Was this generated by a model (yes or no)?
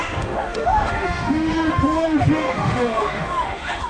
yes